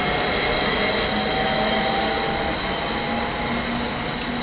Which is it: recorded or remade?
recorded